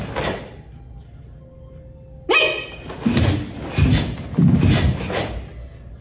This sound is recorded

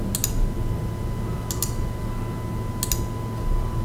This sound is recorded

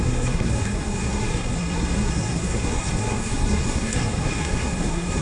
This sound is remade